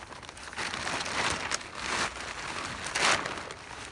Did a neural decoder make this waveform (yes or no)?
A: no